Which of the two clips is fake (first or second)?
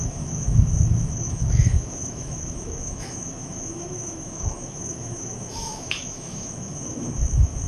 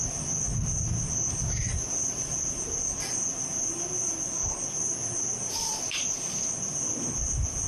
first